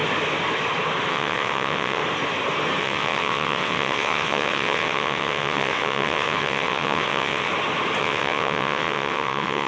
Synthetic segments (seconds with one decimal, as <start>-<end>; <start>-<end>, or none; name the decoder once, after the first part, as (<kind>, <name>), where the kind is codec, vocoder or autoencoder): 1.1-2.0 (vocoder, WaveNeXt); 2.8-7.5; 8.0-9.7